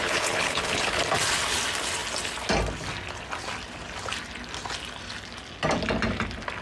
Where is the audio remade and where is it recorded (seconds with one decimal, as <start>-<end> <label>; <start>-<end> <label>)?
0.0-1.0 remade; 1.0-6.6 recorded